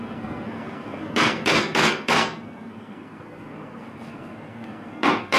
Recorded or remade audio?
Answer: remade